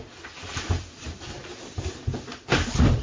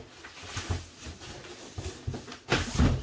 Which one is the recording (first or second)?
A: second